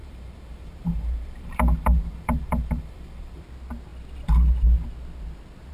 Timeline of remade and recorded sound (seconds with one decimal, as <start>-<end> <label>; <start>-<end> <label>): 0.0-3.4 remade; 3.4-5.7 recorded